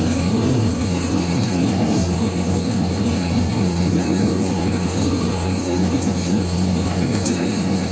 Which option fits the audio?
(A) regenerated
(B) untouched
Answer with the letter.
A